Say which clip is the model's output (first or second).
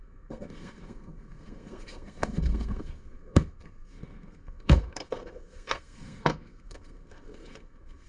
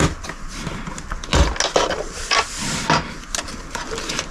first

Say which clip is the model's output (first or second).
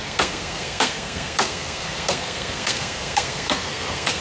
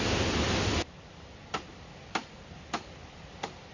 first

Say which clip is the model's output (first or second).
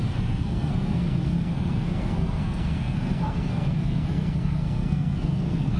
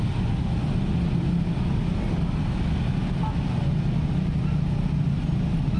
first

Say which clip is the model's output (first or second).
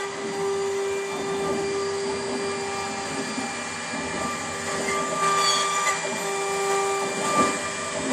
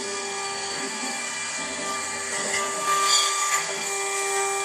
second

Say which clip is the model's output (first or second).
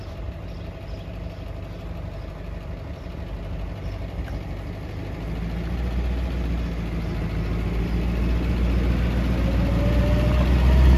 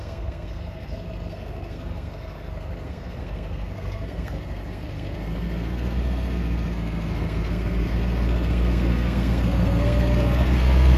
second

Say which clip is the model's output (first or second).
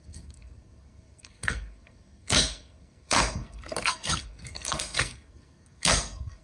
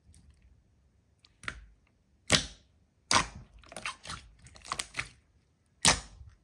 first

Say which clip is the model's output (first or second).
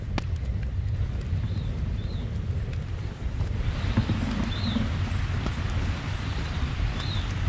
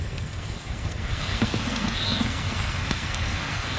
second